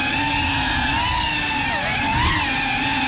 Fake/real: real